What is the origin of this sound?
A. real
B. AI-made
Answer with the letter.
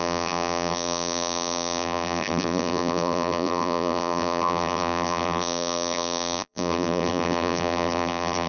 B